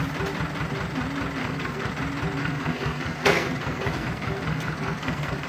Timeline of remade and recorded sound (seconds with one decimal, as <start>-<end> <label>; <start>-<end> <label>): 0.0-1.4 recorded; 1.4-1.9 remade; 1.9-2.4 recorded; 2.4-5.5 remade